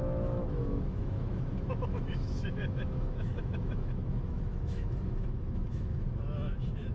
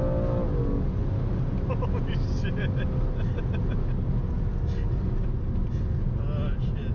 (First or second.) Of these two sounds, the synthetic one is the first